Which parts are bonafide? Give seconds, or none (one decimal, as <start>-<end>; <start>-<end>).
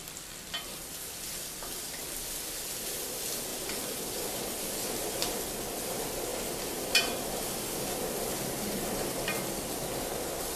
2.0-3.5; 4.5-6.3; 9.7-10.6